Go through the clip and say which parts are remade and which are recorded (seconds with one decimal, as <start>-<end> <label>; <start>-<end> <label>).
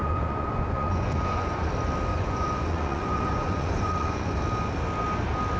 0.0-1.7 remade; 1.7-2.1 recorded; 2.1-4.4 remade; 4.4-5.6 recorded